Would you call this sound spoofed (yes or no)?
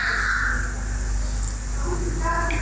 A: no